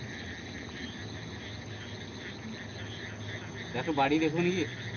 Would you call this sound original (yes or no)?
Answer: yes